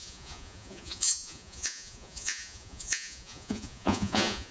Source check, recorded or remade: remade